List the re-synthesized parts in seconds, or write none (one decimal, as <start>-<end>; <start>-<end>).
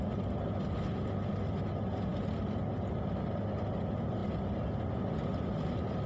none